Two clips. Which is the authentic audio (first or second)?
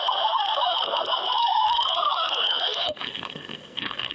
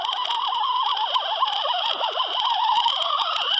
second